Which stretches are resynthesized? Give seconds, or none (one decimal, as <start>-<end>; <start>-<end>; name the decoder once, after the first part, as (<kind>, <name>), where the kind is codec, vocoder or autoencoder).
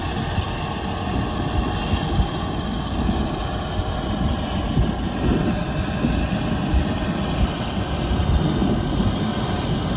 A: none